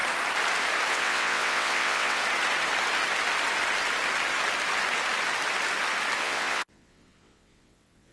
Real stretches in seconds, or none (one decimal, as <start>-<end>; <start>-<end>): 0.0-0.9; 2.2-6.2